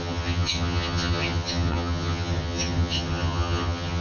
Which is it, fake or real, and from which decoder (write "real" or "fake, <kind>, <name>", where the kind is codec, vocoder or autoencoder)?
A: fake, vocoder, HiFi-GAN